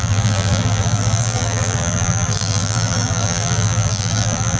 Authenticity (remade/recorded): remade